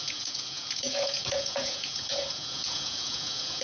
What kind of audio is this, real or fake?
fake